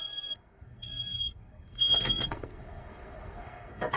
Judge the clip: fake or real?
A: fake